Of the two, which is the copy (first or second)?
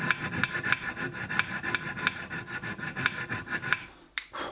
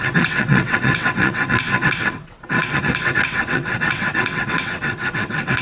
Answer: second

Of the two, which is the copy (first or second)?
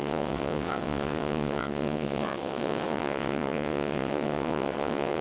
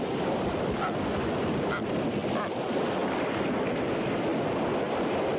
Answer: first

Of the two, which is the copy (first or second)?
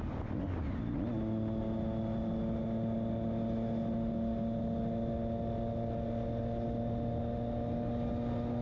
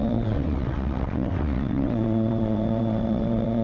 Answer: second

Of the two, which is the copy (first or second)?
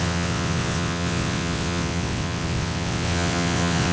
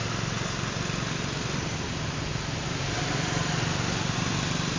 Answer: first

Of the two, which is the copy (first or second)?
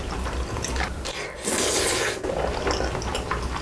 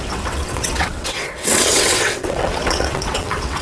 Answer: second